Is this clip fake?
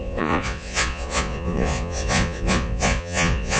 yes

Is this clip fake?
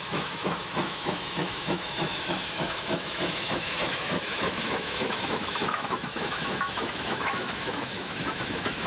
yes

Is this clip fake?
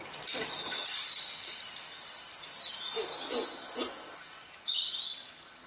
no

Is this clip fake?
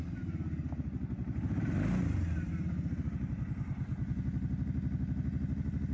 no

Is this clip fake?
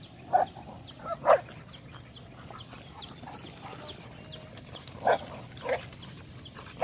no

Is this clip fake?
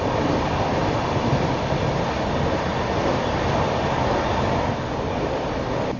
no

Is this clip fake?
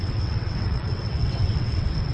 yes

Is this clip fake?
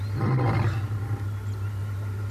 no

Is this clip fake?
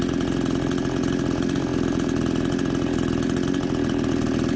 no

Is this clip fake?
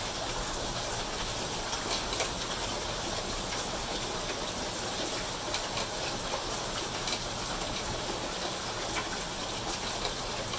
no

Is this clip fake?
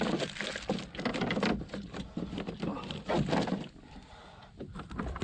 no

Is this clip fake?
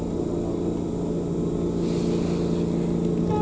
no